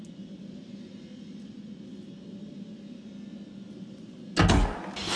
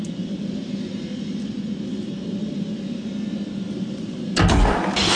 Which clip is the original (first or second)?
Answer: first